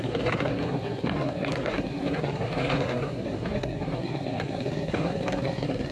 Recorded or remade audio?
remade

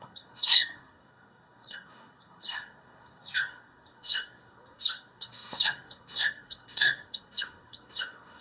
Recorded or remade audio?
remade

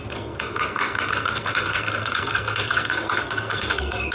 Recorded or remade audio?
remade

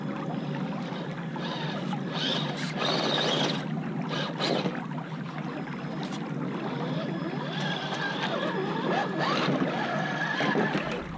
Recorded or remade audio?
recorded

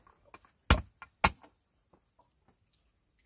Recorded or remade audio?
recorded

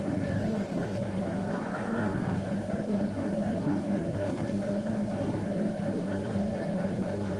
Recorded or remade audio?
remade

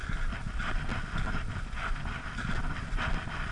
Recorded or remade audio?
recorded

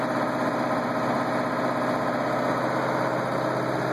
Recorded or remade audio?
recorded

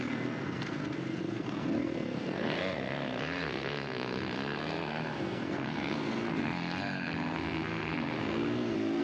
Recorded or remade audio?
remade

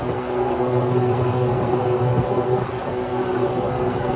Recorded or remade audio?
remade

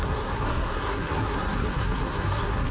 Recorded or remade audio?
remade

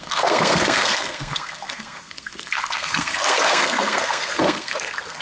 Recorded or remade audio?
remade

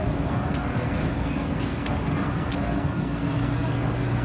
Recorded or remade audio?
remade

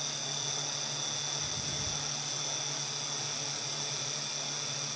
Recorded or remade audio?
recorded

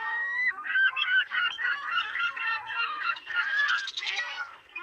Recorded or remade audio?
remade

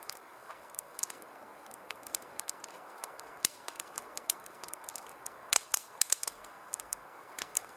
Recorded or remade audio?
remade